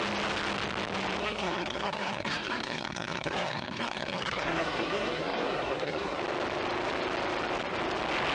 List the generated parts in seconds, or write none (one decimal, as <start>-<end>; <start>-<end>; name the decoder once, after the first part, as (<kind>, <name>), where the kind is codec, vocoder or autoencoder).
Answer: 1.2-6.2 (codec, SNAC)